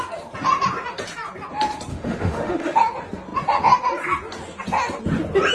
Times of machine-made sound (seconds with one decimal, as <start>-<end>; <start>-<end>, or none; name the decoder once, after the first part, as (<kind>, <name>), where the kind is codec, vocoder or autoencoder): 1.9-2.8 (autoencoder, DAC-VAE)